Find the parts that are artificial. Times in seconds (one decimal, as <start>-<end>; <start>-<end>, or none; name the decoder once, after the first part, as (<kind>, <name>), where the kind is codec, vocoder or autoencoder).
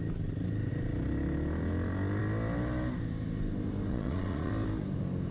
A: 3.9-4.5 (vocoder, Vocos)